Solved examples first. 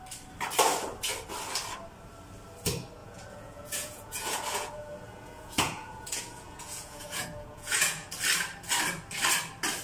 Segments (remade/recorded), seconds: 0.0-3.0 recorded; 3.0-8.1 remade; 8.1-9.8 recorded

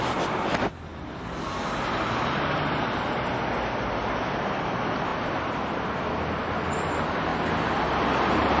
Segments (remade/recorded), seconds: 0.0-8.6 recorded